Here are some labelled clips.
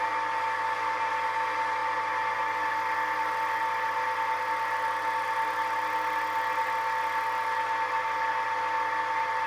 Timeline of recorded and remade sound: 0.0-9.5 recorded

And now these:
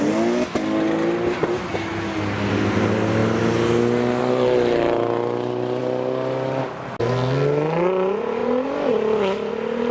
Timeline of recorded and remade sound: 0.0-9.9 recorded

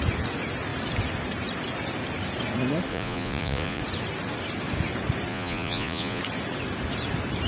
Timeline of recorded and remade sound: 0.0-2.9 recorded; 2.9-3.8 remade; 3.8-5.3 recorded; 5.3-6.2 remade; 6.2-7.5 recorded